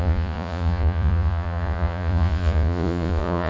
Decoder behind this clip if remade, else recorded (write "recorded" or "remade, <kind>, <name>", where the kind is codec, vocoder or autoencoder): remade, vocoder, Vocos